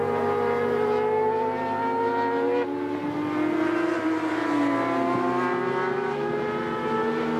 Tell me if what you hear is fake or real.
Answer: real